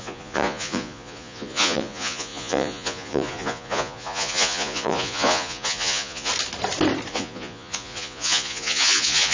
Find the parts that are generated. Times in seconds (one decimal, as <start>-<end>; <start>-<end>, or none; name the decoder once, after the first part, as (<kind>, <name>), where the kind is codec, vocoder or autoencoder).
0.0-6.3 (vocoder, Vocos); 7.1-9.3